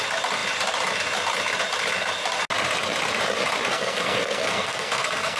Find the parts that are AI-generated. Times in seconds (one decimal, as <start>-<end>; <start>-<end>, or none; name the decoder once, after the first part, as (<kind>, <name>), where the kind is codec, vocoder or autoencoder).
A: 3.7-5.4 (codec, SNAC)